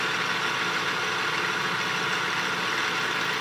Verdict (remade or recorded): recorded